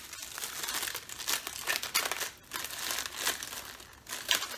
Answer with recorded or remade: recorded